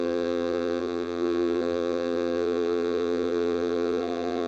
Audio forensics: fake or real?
fake